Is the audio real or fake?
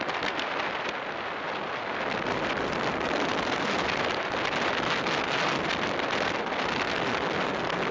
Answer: real